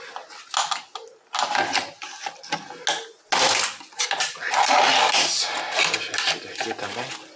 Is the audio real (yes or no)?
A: yes